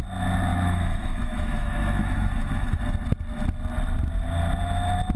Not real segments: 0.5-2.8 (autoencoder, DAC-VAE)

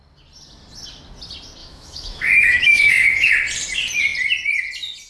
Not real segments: 1.6-3.3 (autoencoder, DAC-VAE)

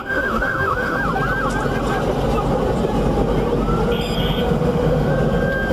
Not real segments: 0.0-1.0 (autoencoder, DAC-VAE); 4.4-5.1